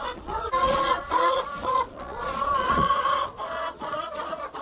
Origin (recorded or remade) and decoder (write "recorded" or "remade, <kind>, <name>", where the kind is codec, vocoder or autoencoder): remade, vocoder, Vocos